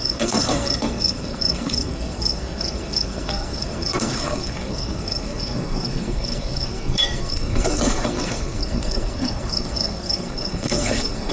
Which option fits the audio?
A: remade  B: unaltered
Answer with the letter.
A